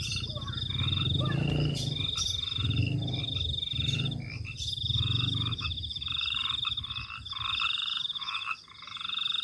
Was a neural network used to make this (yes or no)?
no